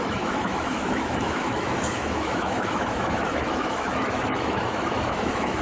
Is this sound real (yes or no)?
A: no